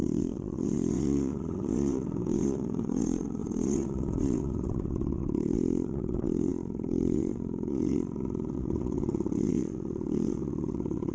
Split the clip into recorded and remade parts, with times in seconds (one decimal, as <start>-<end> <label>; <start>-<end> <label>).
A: 0.0-11.1 remade